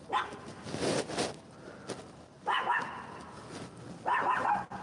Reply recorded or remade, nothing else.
recorded